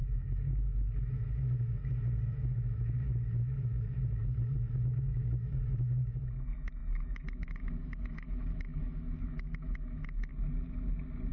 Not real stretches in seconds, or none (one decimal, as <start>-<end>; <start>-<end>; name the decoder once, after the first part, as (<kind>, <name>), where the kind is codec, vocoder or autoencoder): 0.0-10.3 (autoencoder, DAC-VAE)